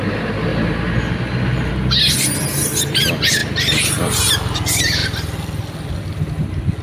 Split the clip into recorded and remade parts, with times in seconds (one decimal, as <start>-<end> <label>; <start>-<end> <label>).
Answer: 0.0-6.8 recorded